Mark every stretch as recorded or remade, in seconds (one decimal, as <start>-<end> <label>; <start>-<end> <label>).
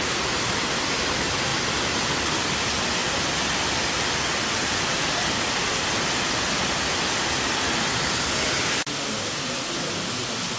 0.0-10.6 recorded